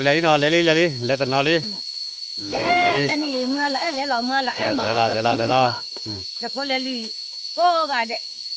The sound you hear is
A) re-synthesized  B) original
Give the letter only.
A